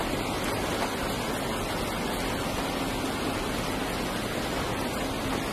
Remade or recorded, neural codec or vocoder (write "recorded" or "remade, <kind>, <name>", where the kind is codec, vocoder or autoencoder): recorded